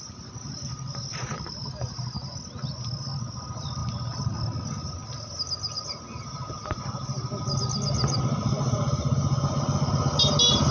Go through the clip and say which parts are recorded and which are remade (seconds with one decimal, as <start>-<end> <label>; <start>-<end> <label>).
0.0-10.7 recorded